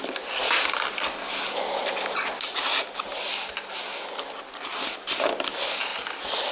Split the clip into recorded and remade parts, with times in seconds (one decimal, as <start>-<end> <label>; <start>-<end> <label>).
0.0-6.5 recorded